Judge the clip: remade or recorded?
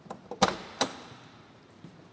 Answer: remade